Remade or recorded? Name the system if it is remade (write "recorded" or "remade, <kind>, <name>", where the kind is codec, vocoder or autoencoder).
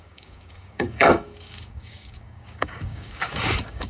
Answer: remade, codec, DAC